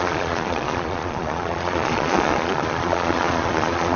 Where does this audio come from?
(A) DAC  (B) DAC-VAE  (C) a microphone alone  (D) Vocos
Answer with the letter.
D